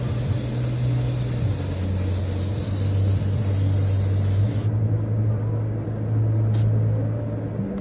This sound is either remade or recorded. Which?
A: recorded